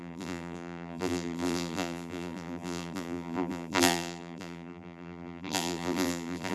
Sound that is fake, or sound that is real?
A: fake